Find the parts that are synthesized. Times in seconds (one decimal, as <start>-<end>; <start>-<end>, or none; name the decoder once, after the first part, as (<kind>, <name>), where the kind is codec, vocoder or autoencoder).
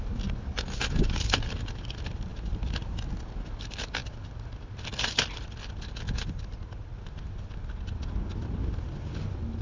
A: none